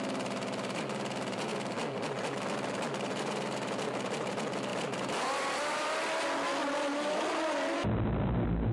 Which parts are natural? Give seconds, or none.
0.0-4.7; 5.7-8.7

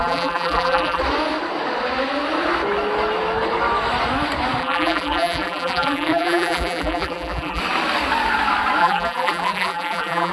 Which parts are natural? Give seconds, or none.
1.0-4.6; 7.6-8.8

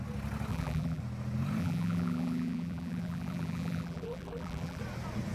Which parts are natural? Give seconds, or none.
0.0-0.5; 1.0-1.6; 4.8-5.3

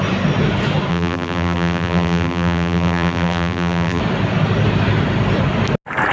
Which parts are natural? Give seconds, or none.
0.0-0.9; 4.0-6.1

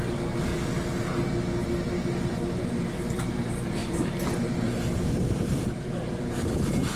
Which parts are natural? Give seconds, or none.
0.5-2.3; 3.8-4.6